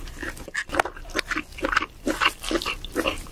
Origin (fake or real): real